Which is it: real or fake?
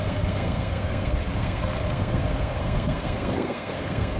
fake